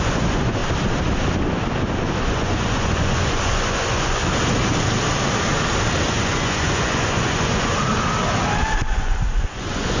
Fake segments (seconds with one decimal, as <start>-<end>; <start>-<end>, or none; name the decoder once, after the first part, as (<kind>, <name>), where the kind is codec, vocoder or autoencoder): 0.0-0.6 (vocoder, Vocos); 2.2-4.2; 6.1-7.7; 8.8-10.0